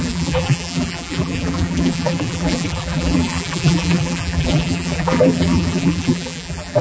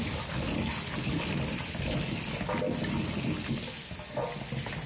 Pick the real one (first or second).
second